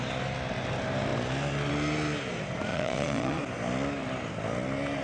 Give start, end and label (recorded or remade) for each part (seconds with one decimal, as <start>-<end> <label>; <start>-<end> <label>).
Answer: 0.0-2.7 recorded; 2.7-3.4 remade; 3.4-5.0 recorded